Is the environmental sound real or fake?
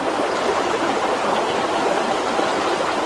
real